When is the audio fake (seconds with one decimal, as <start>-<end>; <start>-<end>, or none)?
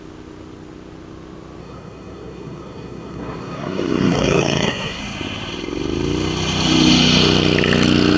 1.6-5.0